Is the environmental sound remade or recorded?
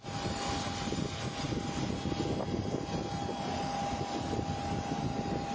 recorded